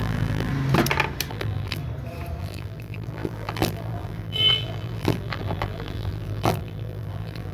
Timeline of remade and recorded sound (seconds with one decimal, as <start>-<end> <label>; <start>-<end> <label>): 0.0-0.5 remade; 0.5-1.3 recorded; 1.3-1.8 remade; 1.8-2.4 recorded; 2.4-7.5 remade